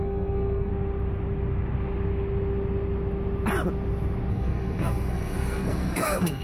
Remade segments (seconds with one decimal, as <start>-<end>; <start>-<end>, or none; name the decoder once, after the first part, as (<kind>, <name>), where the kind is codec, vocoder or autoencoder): 0.0-0.7 (codec, SNAC); 4.3-6.4